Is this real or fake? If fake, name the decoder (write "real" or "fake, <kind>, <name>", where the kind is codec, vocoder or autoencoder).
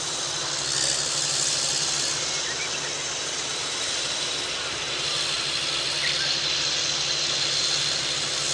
real